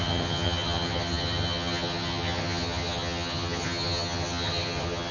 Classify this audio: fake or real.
fake